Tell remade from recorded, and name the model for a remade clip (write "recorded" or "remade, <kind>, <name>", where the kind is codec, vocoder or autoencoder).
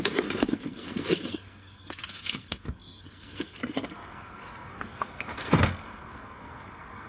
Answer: remade, codec, SNAC